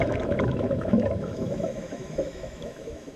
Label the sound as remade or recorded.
remade